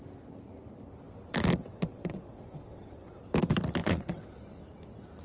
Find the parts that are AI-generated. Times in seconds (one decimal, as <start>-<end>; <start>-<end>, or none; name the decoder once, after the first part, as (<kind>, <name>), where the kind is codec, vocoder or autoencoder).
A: 1.6-3.2 (vocoder, WaveNeXt); 3.8-4.3